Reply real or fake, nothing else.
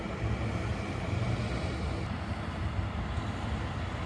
real